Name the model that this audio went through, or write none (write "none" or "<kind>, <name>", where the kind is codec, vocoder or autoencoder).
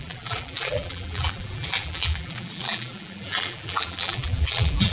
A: vocoder, BigVGAN v2